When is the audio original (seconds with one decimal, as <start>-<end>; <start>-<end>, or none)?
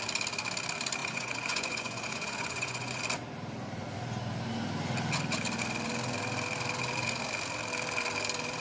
0.0-1.0; 3.0-8.6